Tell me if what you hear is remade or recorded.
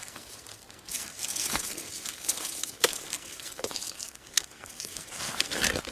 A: remade